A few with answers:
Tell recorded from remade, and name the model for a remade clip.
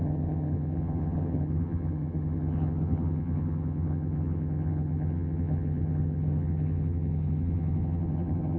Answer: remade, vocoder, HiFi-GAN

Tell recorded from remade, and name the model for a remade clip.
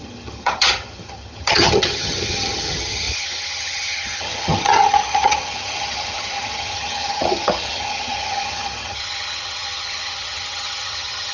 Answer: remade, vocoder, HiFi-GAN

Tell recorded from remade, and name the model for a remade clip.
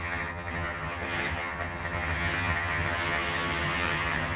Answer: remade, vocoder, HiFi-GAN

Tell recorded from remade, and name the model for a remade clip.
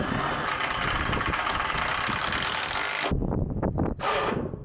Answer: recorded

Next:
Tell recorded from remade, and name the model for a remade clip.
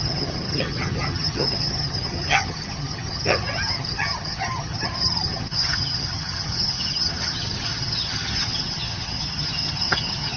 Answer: remade, vocoder, HiFi-GAN